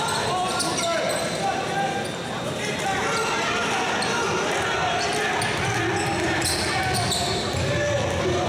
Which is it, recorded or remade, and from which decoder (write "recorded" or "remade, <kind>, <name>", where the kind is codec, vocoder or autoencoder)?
recorded